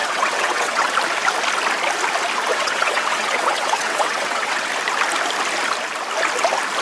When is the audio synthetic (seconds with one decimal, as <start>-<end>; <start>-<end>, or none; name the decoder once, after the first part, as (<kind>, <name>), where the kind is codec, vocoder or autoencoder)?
0.0-0.9 (vocoder, WaveNeXt); 2.5-4.7